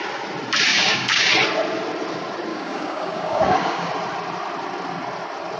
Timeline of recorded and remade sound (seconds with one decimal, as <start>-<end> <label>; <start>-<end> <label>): 0.0-0.7 recorded; 0.7-1.3 remade; 1.3-2.5 recorded; 2.5-3.9 remade; 3.9-5.6 recorded